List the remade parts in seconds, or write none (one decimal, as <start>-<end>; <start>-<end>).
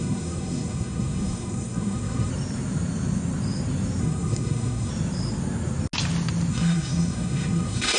0.0-2.3; 4.0-4.9; 6.5-8.0